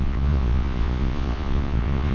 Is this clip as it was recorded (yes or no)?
no